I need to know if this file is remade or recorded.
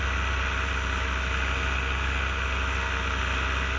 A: recorded